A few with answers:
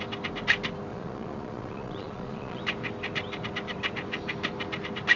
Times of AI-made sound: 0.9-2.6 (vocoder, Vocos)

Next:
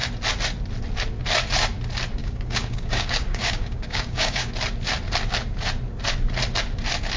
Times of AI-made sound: 2.2-4.5 (codec, DAC)